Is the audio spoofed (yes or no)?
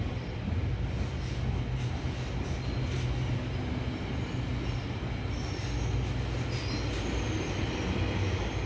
no